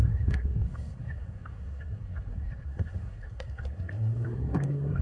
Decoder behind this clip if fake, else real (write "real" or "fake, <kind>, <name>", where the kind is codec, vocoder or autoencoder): fake, codec, SNAC